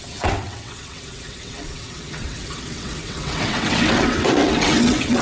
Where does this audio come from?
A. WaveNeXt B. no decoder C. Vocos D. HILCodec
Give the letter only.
A